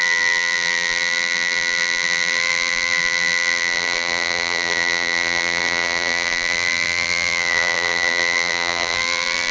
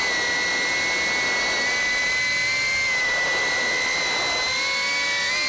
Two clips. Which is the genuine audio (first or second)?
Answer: second